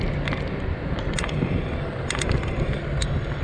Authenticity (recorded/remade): recorded